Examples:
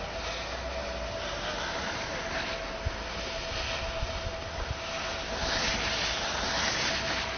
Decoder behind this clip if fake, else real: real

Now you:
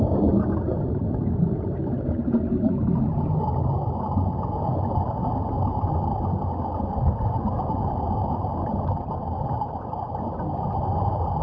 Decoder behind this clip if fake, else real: real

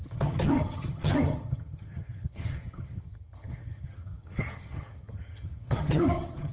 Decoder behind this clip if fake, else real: fake, vocoder, HiFi-GAN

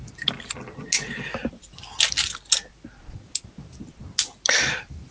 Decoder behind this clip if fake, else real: real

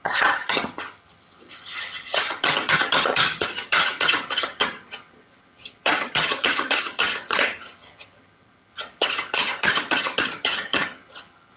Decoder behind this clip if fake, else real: fake, vocoder, HiFi-GAN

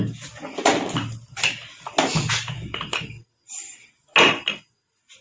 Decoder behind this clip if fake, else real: real